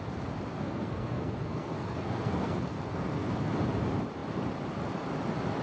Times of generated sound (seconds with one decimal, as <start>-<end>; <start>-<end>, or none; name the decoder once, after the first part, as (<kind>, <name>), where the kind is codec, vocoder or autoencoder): 0.5-3.5 (codec, SNAC)